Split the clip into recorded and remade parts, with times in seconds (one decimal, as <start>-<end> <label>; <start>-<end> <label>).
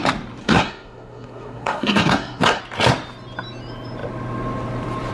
0.0-0.4 recorded; 0.4-2.6 remade; 2.6-5.1 recorded